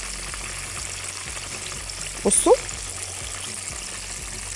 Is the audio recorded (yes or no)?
yes